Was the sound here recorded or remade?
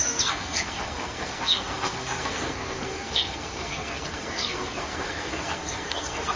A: remade